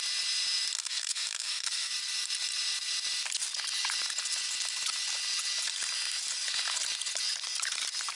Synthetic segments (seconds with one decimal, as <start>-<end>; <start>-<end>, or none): 0.8-1.9